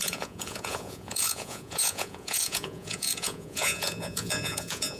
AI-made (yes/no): yes